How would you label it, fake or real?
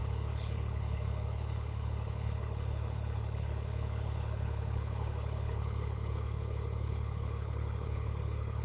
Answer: fake